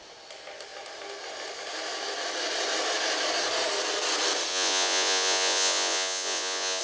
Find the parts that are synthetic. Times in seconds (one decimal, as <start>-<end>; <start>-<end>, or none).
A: 4.5-6.8